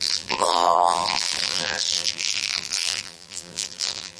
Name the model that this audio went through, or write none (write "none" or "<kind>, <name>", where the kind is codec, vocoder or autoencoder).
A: vocoder, BigVGAN v2